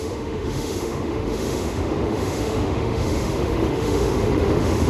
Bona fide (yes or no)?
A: no